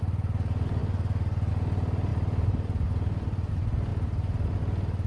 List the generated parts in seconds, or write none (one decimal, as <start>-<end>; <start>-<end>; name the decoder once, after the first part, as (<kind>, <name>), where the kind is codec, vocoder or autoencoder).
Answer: 2.1-3.5 (vocoder, BigVGAN v2)